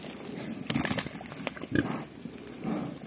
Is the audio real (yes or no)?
yes